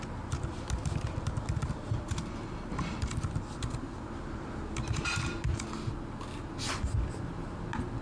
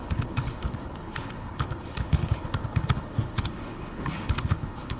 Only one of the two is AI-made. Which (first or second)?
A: second